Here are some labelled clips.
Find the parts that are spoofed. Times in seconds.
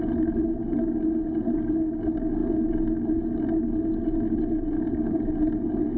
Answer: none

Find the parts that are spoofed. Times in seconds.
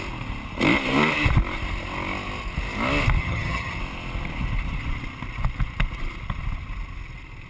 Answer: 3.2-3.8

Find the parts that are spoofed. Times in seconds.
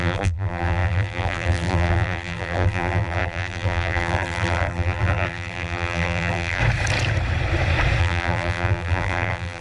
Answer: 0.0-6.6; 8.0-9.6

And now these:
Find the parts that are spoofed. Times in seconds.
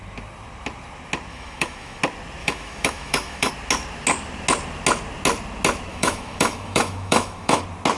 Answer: 1.3-2.0; 2.4-3.5; 5.9-7.6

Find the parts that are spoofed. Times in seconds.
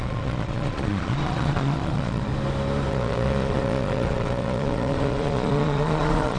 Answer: 0.0-2.3; 2.9-6.4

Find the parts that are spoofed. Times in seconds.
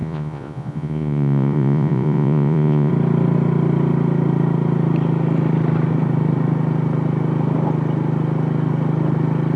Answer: 0.0-2.9